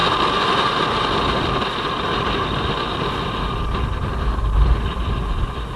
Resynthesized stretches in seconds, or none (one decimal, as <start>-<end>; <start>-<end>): none